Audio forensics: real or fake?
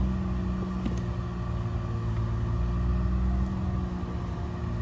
real